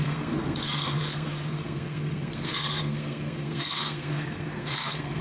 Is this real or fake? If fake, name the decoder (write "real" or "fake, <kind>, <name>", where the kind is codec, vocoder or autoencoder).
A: fake, codec, SNAC